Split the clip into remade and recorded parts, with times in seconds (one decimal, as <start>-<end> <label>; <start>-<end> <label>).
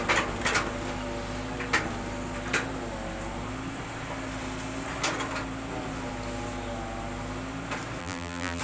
0.0-8.0 recorded; 8.0-8.6 remade